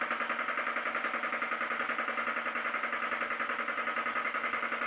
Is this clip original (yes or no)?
yes